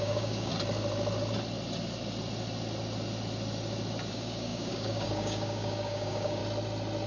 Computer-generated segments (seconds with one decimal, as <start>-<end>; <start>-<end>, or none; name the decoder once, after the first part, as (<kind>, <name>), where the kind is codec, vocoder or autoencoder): 0.0-0.5 (codec, DAC); 4.1-6.4